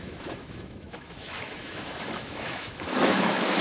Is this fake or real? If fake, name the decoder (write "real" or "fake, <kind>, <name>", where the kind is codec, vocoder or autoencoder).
fake, autoencoder, DAC-VAE